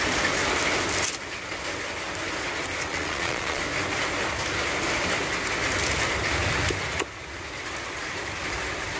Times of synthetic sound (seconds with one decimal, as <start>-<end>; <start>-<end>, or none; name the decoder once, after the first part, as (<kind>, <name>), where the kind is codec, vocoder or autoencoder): 2.9-3.6 (vocoder, Vocos)